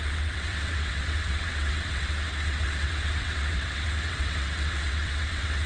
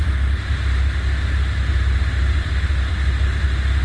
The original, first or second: second